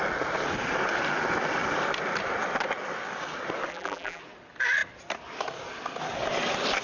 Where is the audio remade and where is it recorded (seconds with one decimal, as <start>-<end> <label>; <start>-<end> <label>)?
0.0-3.7 recorded; 3.7-4.2 remade; 4.2-6.8 recorded

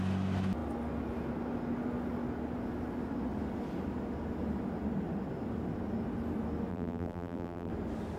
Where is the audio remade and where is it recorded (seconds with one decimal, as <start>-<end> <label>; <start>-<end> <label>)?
0.0-6.7 recorded; 6.7-7.7 remade; 7.7-8.2 recorded

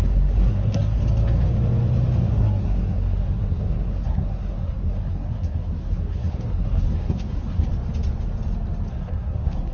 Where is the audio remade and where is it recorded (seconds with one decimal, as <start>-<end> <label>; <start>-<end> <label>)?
0.0-1.0 remade; 1.0-2.3 recorded; 2.3-7.7 remade; 7.7-8.9 recorded; 8.9-9.7 remade

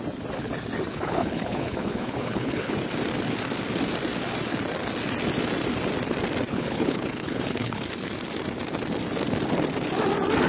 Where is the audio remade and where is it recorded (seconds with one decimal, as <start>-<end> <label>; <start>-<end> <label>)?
0.0-0.9 recorded; 0.9-2.7 remade; 2.7-6.5 recorded; 6.5-7.8 remade; 7.8-10.5 recorded

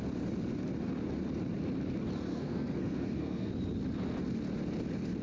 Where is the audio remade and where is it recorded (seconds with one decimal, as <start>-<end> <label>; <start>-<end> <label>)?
0.0-2.3 recorded; 2.3-3.5 remade; 3.5-5.2 recorded